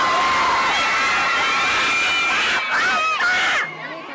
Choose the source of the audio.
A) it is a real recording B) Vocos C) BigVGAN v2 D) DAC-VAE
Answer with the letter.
A